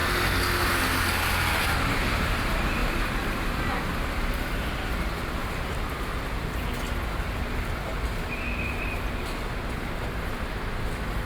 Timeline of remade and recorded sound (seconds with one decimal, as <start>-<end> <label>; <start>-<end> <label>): 0.0-2.8 recorded; 2.8-3.6 remade; 3.6-11.3 recorded